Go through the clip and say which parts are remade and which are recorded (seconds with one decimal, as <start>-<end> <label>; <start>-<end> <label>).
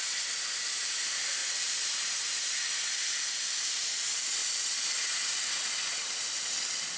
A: 0.0-7.0 recorded